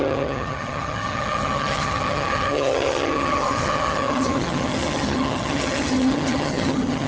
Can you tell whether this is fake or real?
fake